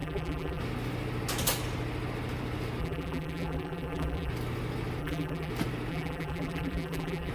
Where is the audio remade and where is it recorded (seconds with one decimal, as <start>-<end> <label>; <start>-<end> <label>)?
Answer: 0.0-0.6 remade; 0.6-2.8 recorded; 2.8-4.3 remade; 4.3-5.0 recorded; 5.0-5.5 remade; 5.5-5.9 recorded; 5.9-7.3 remade